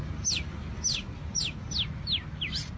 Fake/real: real